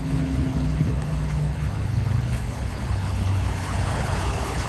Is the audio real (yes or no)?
no